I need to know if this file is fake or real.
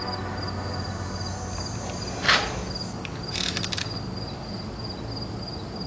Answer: real